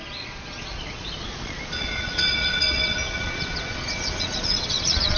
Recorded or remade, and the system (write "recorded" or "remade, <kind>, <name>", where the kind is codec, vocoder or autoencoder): remade, vocoder, Vocos